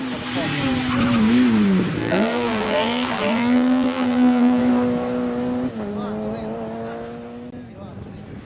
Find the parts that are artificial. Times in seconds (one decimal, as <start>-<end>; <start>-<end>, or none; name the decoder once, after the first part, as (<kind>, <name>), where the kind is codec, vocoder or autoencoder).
2.0-4.6 (vocoder, BigVGAN v2)